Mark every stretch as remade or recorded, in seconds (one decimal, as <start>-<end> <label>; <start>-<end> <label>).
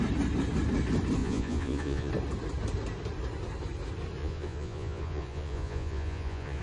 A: 0.0-1.2 recorded; 1.2-2.1 remade; 2.1-4.2 recorded; 4.2-6.6 remade